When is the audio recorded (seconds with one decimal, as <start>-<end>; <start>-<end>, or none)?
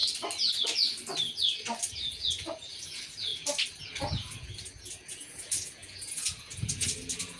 0.0-1.9; 3.3-3.8